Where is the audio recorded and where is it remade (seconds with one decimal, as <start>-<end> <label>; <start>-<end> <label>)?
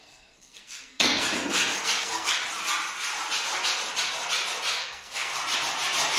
0.0-2.4 remade; 2.4-4.7 recorded; 4.7-5.3 remade; 5.3-6.2 recorded